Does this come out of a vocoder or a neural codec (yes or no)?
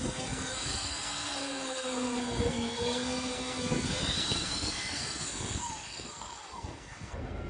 yes